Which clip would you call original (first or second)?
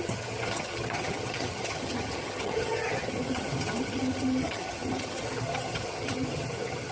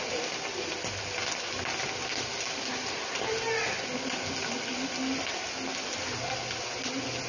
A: second